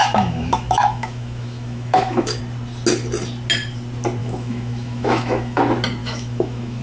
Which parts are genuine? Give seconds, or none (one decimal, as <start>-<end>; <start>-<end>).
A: 2.4-4.2; 5.6-6.0